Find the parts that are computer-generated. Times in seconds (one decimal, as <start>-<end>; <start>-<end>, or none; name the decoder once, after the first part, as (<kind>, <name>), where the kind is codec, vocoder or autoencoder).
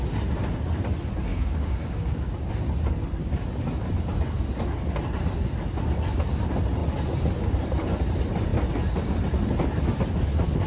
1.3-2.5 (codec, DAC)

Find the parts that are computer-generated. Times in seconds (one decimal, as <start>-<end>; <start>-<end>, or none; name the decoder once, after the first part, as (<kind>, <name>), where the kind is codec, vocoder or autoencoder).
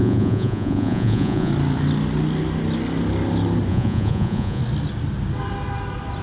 0.0-1.5 (vocoder, Vocos); 3.7-4.6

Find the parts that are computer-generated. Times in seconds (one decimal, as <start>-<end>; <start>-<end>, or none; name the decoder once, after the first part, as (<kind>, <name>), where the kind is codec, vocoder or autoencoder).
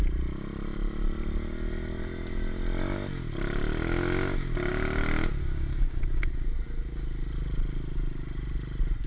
5.4-6.0 (codec, DAC)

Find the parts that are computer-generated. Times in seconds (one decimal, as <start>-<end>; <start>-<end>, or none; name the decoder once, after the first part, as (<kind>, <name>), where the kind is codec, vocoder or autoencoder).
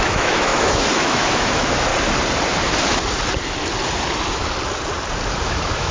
0.0-1.9 (autoencoder, DAC-VAE); 5.4-5.9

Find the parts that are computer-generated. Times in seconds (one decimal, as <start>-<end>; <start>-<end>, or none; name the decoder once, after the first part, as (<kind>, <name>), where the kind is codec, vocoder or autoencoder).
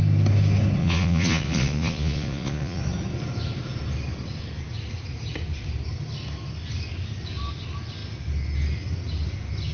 0.8-2.8 (vocoder, Vocos)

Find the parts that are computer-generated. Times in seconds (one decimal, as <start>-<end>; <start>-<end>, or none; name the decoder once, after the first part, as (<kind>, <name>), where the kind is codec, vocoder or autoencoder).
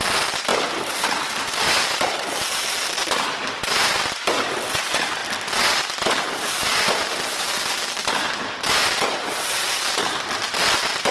none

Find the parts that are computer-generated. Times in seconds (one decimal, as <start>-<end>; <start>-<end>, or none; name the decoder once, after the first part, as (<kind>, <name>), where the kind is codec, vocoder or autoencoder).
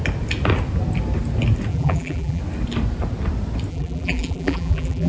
1.7-2.4 (vocoder, BigVGAN v2); 3.7-5.1